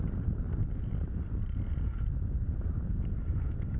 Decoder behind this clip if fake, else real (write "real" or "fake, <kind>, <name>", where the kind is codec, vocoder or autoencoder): fake, vocoder, BigVGAN v2